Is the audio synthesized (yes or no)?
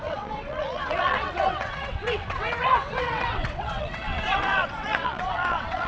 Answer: yes